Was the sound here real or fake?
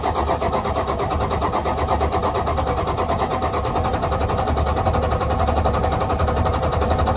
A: real